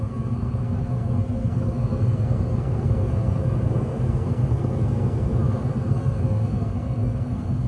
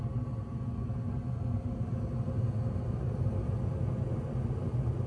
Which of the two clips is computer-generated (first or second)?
first